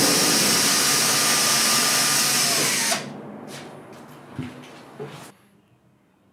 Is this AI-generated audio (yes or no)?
no